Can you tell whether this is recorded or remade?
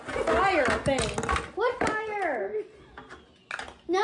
recorded